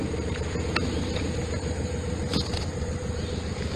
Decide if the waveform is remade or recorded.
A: recorded